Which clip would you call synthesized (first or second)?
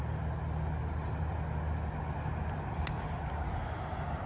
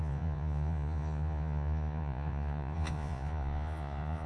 second